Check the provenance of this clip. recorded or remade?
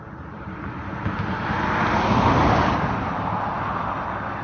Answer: recorded